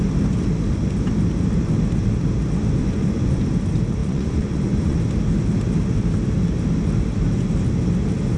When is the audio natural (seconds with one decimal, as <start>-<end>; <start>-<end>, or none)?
0.0-2.8; 3.4-4.0; 5.0-8.4